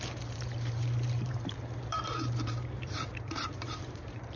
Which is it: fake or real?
fake